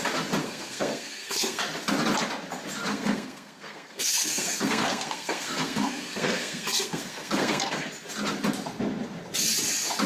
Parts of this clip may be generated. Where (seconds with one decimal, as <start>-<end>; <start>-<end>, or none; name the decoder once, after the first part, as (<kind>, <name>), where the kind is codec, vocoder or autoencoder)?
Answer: 0.4-1.6 (codec, SNAC); 2.9-7.9